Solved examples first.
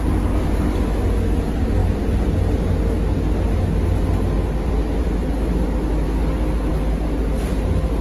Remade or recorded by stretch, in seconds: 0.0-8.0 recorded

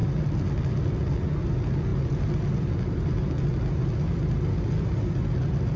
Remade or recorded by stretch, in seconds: 0.0-5.8 recorded